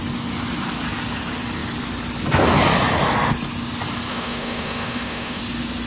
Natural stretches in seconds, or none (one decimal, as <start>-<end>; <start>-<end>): 0.0-4.1; 5.4-5.9